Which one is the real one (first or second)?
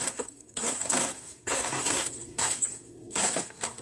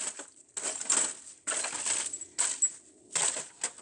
second